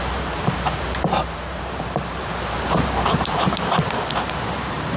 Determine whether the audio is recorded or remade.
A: remade